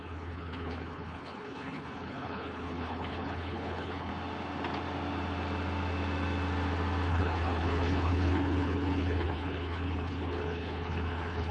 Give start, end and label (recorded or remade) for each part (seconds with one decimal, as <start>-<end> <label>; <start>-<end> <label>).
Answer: 0.0-4.1 remade; 4.1-7.1 recorded; 7.1-11.5 remade